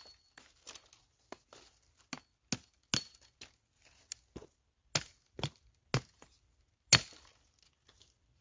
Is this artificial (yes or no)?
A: no